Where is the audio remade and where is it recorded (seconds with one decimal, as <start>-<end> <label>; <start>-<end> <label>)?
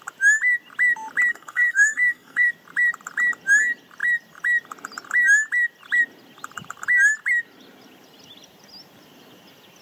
0.0-1.3 recorded; 1.3-2.5 remade; 2.5-9.8 recorded